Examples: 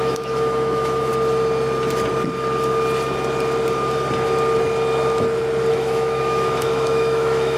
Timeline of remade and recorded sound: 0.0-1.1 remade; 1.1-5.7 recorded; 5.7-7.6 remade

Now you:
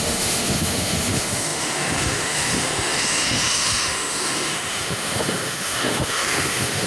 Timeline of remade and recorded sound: 0.0-6.9 remade

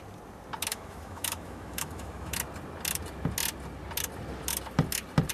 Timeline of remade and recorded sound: 0.0-0.7 recorded; 0.7-2.3 remade; 2.3-5.3 recorded

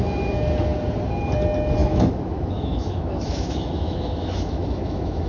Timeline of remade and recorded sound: 0.0-1.8 recorded; 1.8-5.3 remade

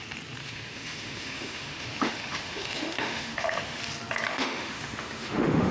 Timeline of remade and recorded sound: 0.0-0.4 recorded; 0.4-3.8 remade; 3.8-4.3 recorded; 4.3-5.7 remade

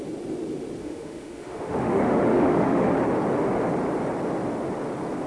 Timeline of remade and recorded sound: 0.0-0.8 recorded; 0.8-3.0 remade; 3.0-5.3 recorded

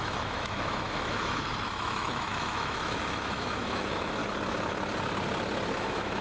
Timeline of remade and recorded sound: 0.0-4.2 remade; 4.2-5.8 recorded; 5.8-6.2 remade